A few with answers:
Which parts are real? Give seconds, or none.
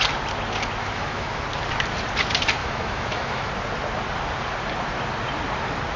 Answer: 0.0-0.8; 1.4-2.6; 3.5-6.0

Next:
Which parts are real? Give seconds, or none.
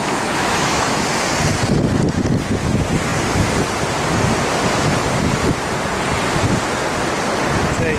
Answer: 1.0-8.0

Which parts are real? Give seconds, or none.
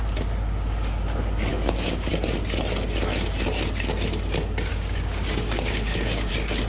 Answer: 0.0-1.5; 2.1-4.7; 6.3-6.7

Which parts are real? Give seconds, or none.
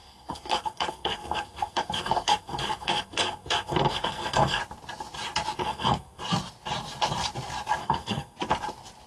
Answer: 4.6-5.6; 6.2-7.8; 8.4-9.1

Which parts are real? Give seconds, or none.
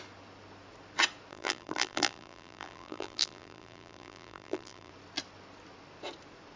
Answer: 0.0-1.3; 4.9-6.6